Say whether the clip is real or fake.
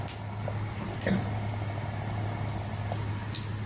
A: real